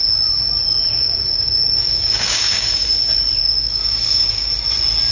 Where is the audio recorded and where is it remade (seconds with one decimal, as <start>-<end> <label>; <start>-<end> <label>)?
0.0-0.9 recorded; 0.9-2.7 remade; 2.7-3.4 recorded; 3.4-4.5 remade; 4.5-5.1 recorded